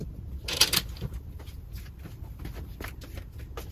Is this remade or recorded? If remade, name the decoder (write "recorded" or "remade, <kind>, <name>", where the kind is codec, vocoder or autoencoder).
recorded